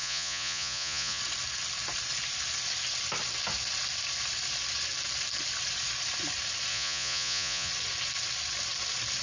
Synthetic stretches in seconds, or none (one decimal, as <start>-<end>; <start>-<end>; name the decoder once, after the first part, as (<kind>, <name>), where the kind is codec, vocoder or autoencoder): 0.0-1.2 (vocoder, Vocos); 6.7-7.7